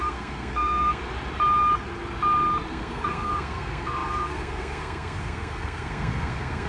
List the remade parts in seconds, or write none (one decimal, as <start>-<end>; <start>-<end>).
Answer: 0.0-1.0; 2.7-6.7